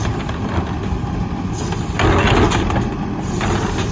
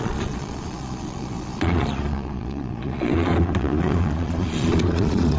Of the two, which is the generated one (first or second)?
second